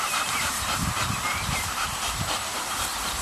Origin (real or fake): fake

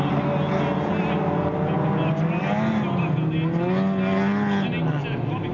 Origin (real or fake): real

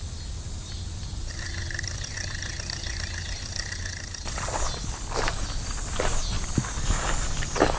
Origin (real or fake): real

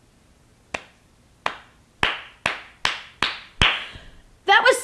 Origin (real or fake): real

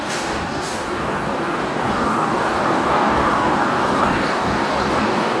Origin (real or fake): fake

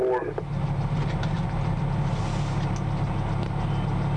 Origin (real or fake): real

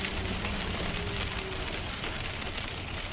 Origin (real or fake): real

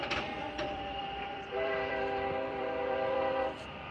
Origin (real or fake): fake